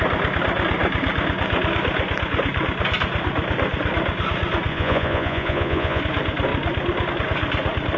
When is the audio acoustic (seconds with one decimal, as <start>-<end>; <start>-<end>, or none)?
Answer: 0.0-4.7; 6.0-8.0